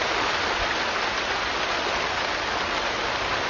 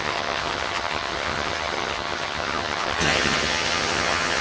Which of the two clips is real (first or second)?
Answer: first